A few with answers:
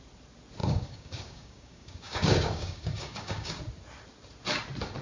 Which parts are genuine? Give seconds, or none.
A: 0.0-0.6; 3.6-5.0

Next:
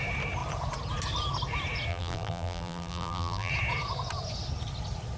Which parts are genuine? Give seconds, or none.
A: 0.0-1.9; 3.5-5.2

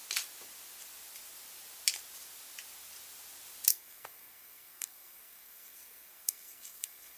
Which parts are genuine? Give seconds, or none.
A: 0.0-3.7

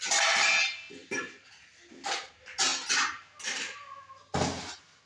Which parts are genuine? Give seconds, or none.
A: 0.0-1.0; 1.5-5.1

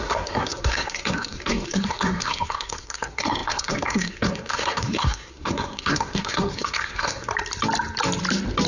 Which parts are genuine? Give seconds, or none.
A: 7.3-8.7

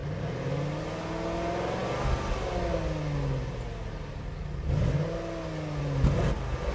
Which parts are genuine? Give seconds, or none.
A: 0.0-6.7

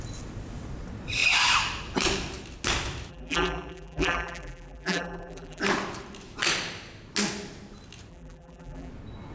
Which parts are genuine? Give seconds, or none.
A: 0.0-3.1; 5.6-8.1; 8.9-9.3